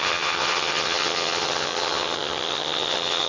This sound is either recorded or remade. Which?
remade